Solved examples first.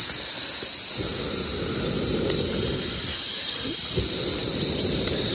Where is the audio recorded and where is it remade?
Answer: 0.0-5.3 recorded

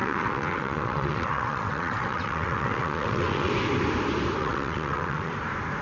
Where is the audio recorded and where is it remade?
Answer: 0.0-3.5 remade; 3.5-4.4 recorded; 4.4-5.3 remade; 5.3-5.8 recorded

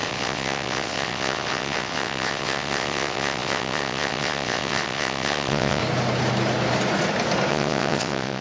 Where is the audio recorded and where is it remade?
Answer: 0.0-5.8 remade; 5.8-7.5 recorded; 7.5-8.4 remade

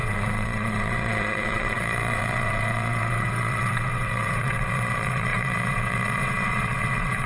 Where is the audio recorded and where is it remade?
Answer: 0.0-7.3 remade

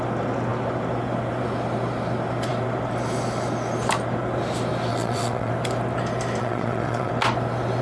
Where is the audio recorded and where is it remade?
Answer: 0.0-4.9 recorded; 4.9-5.5 remade; 5.5-6.4 recorded; 6.4-7.1 remade; 7.1-7.8 recorded

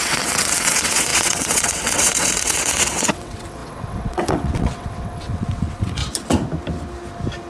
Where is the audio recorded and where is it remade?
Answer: 0.0-6.0 remade; 6.0-7.5 recorded